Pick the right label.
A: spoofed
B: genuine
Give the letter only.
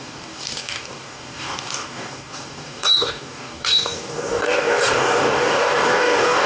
A